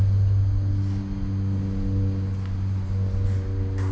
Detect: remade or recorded recorded